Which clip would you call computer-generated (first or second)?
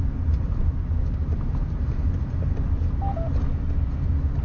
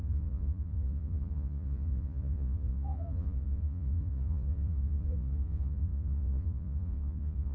second